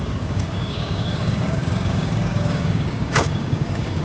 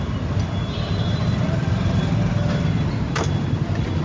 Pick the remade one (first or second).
first